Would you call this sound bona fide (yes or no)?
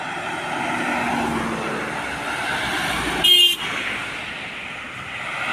yes